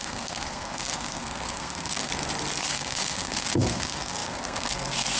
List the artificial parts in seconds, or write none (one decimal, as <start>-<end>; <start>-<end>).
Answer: 0.0-2.1; 2.7-5.2